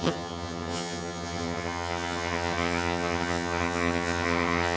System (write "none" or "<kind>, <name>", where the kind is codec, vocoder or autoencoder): vocoder, HiFi-GAN